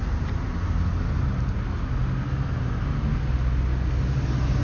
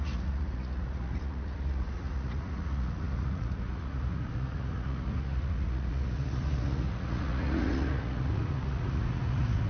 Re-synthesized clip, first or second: second